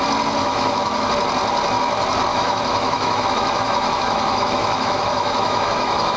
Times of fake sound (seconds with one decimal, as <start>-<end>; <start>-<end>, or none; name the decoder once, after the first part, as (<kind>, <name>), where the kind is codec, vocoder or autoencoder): 0.4-1.1 (autoencoder, DAC-VAE); 2.3-6.2

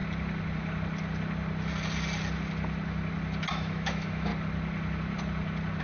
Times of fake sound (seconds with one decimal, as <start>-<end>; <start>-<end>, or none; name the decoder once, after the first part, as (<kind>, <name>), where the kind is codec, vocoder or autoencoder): 3.5-4.3 (autoencoder, DAC-VAE)

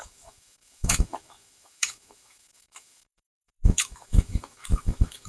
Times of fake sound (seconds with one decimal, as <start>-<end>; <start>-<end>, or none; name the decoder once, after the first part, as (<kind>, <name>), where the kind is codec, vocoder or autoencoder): 0.0-5.3 (autoencoder, DAC-VAE)

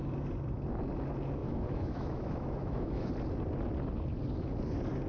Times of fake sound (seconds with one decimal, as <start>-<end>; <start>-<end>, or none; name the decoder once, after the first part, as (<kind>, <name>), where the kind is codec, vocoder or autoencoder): 1.4-3.1 (autoencoder, DAC-VAE)